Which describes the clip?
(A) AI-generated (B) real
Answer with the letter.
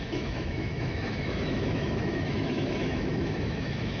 A